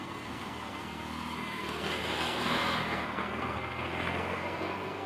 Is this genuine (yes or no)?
no